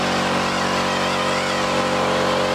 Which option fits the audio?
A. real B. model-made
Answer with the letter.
A